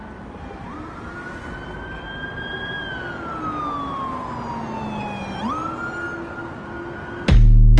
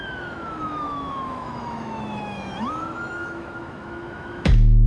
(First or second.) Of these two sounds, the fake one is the second